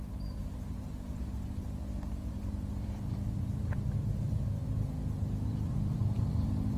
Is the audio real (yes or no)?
no